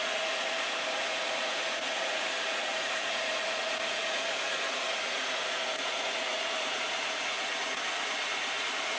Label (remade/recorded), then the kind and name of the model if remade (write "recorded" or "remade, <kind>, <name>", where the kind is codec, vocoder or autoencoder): remade, vocoder, Vocos